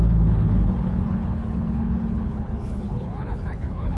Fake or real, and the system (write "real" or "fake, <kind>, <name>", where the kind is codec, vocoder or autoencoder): fake, codec, HILCodec